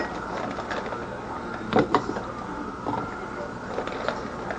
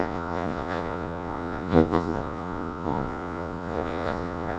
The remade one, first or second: second